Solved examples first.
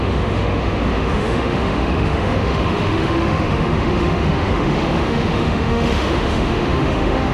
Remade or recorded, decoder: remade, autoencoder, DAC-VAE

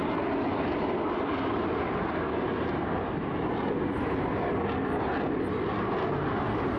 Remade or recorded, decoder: recorded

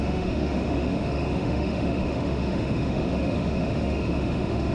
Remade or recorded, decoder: remade, autoencoder, DAC-VAE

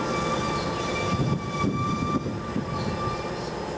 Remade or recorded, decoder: recorded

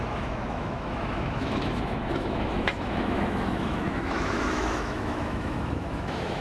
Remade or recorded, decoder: remade, autoencoder, DAC-VAE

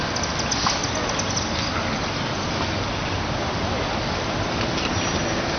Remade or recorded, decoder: recorded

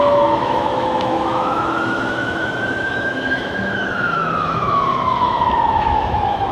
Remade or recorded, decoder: remade, autoencoder, DAC-VAE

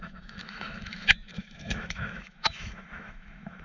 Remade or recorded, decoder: remade, autoencoder, DAC-VAE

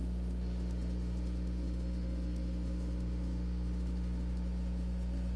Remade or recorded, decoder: remade, autoencoder, DAC-VAE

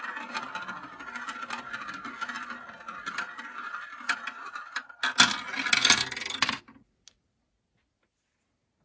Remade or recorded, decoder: recorded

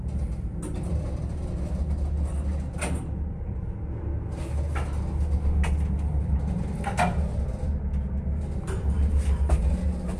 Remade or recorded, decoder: recorded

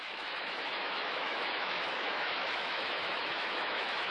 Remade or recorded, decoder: remade, autoencoder, DAC-VAE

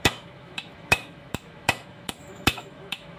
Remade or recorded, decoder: remade, autoencoder, DAC-VAE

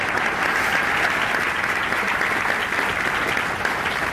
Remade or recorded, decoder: recorded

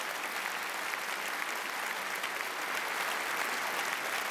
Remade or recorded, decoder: recorded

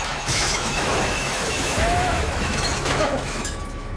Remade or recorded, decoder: remade, autoencoder, DAC-VAE